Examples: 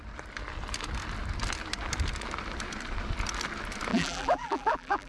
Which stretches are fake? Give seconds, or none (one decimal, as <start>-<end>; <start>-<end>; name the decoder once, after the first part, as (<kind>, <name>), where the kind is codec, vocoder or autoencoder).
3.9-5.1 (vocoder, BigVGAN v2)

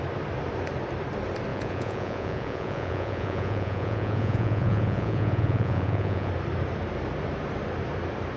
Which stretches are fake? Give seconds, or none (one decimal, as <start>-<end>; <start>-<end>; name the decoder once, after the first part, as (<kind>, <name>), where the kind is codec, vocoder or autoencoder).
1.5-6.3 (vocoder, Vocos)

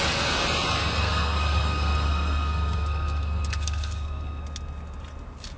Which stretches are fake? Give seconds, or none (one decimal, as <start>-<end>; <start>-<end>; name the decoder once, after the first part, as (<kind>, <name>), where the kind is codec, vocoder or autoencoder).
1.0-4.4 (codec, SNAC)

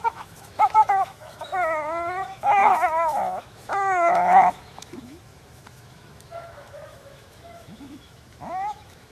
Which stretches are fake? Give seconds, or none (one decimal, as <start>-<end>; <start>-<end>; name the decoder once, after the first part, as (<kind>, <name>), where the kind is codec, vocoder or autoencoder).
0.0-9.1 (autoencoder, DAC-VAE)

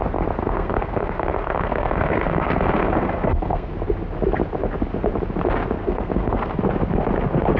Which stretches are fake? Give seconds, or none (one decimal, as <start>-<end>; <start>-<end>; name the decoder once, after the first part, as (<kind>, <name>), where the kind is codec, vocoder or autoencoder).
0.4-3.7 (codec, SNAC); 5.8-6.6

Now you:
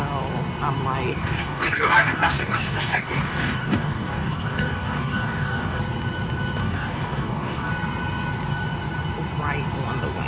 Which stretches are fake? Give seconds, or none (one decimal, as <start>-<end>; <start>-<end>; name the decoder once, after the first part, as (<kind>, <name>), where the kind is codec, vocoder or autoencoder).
1.1-5.8 (codec, DAC); 6.6-7.7